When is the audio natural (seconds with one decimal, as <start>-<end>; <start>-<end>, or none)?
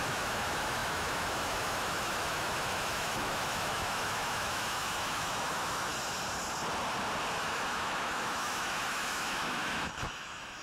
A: 5.9-7.3